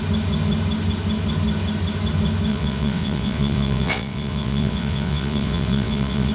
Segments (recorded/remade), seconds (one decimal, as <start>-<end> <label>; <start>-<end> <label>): 0.0-2.5 recorded; 2.5-6.3 remade